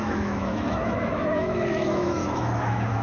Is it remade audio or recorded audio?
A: remade